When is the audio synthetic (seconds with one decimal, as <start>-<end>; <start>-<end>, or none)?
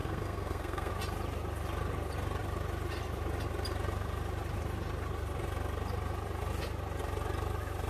0.0-0.9